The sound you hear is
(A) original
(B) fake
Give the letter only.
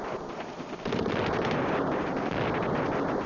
A